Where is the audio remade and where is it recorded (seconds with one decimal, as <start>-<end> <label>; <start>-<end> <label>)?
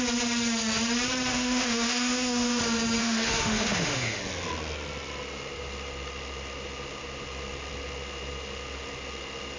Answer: 0.0-1.3 recorded; 1.3-2.6 remade; 2.6-3.0 recorded; 3.0-4.2 remade; 4.2-9.6 recorded